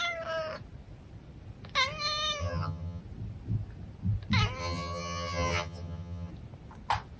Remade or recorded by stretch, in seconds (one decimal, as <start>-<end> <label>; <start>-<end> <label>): 0.0-2.4 recorded; 2.4-3.0 remade; 3.0-4.6 recorded; 4.6-6.3 remade; 6.3-7.2 recorded